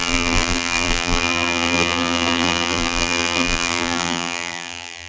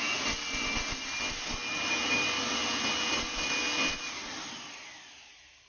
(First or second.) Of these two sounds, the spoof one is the first